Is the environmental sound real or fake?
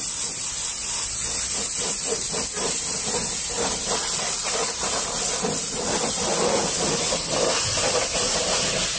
real